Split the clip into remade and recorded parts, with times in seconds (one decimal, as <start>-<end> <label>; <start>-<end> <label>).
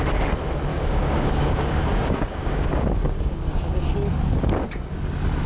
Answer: 0.0-0.7 recorded; 0.7-3.9 remade; 3.9-5.5 recorded